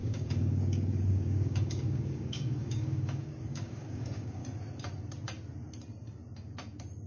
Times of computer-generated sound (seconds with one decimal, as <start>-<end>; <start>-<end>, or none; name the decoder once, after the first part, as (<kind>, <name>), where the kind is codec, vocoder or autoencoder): 0.0-4.4 (codec, DAC)